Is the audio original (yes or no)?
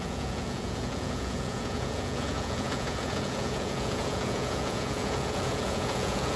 no